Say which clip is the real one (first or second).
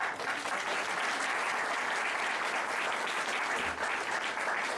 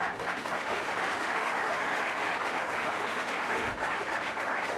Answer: first